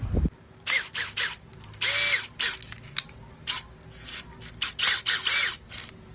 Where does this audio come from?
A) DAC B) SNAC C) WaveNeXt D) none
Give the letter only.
D